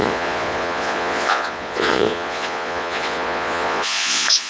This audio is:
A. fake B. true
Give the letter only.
A